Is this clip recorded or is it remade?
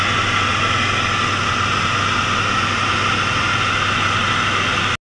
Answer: recorded